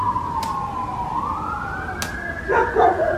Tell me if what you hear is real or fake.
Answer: real